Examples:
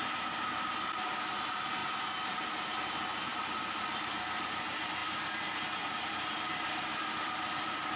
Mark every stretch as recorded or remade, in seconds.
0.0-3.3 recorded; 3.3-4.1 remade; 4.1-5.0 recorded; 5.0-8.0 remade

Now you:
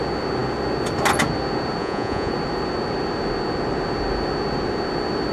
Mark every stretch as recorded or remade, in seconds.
0.0-1.8 recorded; 1.8-2.3 remade; 2.3-5.3 recorded

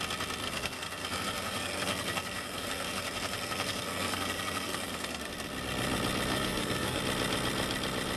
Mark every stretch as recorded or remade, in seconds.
0.0-0.4 recorded; 0.4-5.3 remade; 5.3-6.3 recorded; 6.3-7.0 remade; 7.0-8.2 recorded

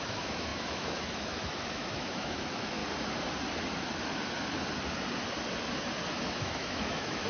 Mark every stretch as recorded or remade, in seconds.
0.0-2.8 remade; 2.8-6.1 recorded; 6.1-7.3 remade

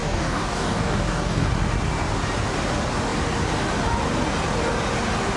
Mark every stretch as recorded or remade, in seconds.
0.0-1.5 remade; 1.5-5.4 recorded

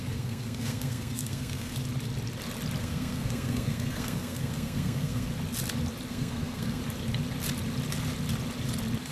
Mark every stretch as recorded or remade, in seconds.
0.0-1.7 remade; 1.7-2.8 recorded; 2.8-5.3 remade; 5.3-6.1 recorded; 6.1-6.8 remade; 6.8-9.1 recorded

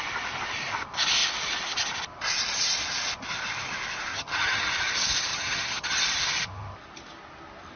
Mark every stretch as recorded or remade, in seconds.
0.0-4.1 recorded; 4.1-4.7 remade; 4.7-5.3 recorded; 5.3-6.0 remade; 6.0-7.8 recorded